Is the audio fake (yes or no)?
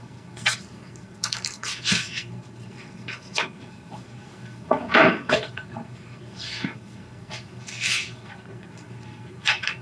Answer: yes